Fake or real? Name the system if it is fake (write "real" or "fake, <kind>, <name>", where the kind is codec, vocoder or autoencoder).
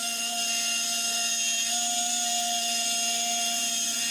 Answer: real